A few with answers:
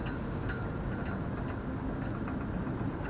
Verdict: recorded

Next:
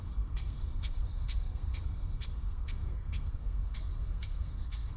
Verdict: remade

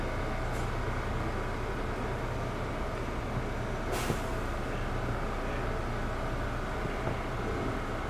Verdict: recorded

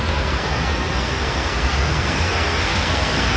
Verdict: remade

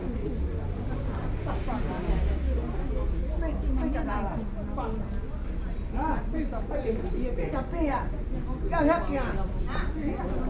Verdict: recorded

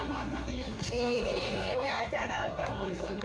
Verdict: remade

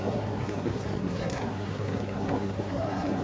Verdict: remade